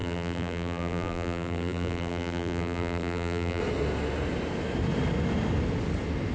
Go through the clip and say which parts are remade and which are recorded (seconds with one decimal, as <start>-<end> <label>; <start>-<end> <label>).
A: 0.0-3.6 remade; 3.6-6.3 recorded